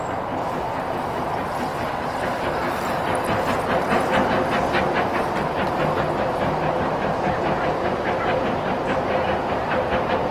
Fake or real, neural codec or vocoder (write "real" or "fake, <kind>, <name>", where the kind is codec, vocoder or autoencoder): real